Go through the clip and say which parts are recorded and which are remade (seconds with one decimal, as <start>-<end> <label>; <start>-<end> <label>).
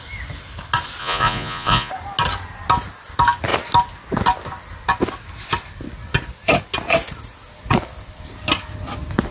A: 0.0-1.0 recorded; 1.0-1.9 remade; 1.9-9.3 recorded